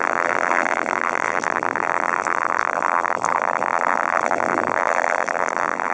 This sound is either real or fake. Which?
fake